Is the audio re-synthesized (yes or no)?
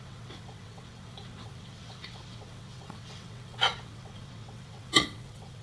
yes